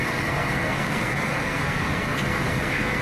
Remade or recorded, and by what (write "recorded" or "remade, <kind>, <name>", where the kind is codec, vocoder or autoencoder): remade, codec, SNAC